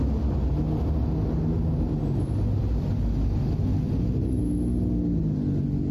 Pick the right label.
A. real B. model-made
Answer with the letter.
A